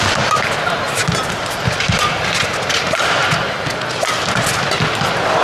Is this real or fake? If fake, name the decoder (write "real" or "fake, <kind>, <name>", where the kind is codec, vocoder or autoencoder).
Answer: real